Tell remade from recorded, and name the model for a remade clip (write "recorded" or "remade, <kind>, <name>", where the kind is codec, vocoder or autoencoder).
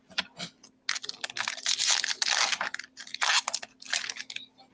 recorded